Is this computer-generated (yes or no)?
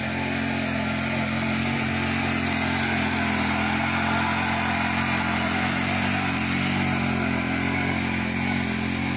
no